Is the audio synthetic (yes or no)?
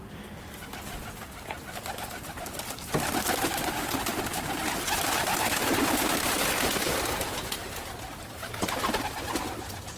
no